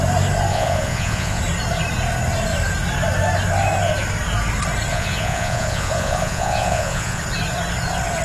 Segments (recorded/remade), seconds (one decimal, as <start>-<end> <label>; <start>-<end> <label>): 0.0-0.5 recorded; 0.5-1.4 remade; 1.4-4.9 recorded; 4.9-7.2 remade; 7.2-8.2 recorded